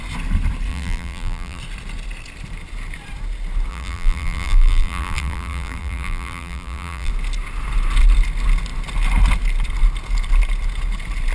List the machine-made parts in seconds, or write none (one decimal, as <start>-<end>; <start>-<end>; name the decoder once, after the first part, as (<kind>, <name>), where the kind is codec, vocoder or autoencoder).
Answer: 0.7-1.6 (vocoder, BigVGAN v2); 3.7-7.1